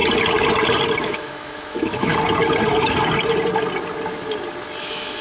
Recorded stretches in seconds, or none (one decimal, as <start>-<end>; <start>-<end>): 0.0-1.0; 2.1-4.8